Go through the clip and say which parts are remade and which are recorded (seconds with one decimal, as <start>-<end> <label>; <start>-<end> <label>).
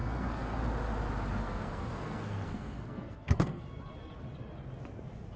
0.0-0.6 remade; 0.6-1.4 recorded; 1.4-3.6 remade; 3.6-5.4 recorded